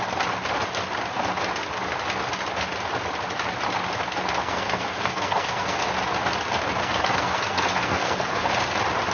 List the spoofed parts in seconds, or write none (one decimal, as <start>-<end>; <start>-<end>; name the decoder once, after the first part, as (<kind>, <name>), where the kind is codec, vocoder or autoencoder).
4.4-5.8 (codec, SNAC); 6.8-8.5